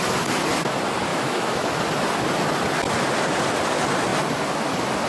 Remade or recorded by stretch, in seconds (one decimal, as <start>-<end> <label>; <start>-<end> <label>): 0.0-1.1 recorded; 1.1-1.8 remade; 1.8-5.1 recorded